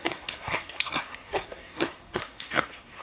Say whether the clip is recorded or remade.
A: remade